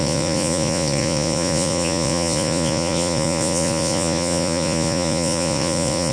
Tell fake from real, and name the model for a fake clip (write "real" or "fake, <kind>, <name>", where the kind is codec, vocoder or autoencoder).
fake, vocoder, Vocos